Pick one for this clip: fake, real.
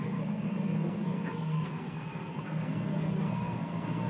fake